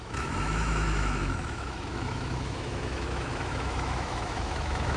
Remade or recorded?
remade